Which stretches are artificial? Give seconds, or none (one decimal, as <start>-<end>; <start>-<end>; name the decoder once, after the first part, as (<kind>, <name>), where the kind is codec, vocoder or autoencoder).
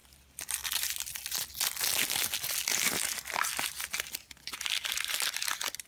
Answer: none